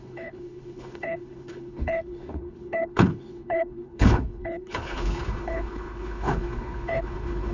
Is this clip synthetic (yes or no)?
yes